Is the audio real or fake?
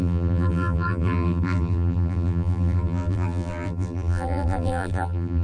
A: fake